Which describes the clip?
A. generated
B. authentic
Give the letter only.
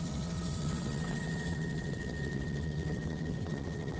A